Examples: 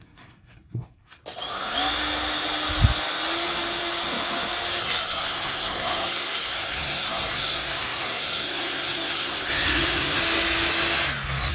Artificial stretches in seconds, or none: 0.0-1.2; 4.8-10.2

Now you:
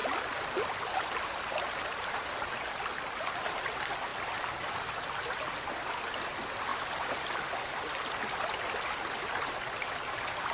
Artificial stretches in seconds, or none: none